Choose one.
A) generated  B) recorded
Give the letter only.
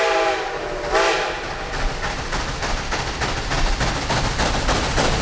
B